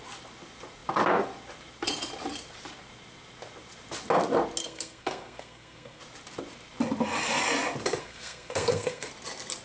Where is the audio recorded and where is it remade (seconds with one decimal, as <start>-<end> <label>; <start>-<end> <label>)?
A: 0.0-4.6 recorded; 4.6-6.0 remade; 6.0-8.0 recorded; 8.0-9.1 remade; 9.1-9.6 recorded